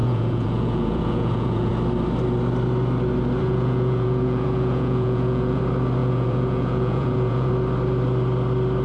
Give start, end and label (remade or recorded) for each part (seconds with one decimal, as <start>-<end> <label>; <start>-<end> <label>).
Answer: 0.0-1.7 remade; 1.7-3.4 recorded; 3.4-5.6 remade; 5.6-6.0 recorded; 6.0-7.5 remade; 7.5-8.8 recorded